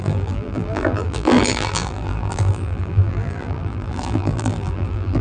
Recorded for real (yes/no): no